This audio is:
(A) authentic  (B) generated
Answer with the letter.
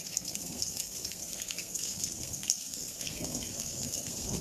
B